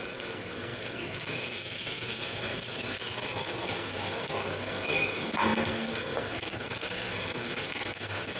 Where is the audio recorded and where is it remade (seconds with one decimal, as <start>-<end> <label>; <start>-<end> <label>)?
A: 0.0-8.4 remade